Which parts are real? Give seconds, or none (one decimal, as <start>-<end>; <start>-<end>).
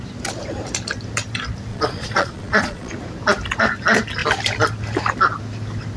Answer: 0.0-1.7; 2.9-6.0